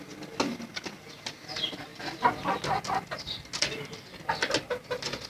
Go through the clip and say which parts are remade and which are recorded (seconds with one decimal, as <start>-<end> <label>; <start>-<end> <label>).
0.0-5.3 recorded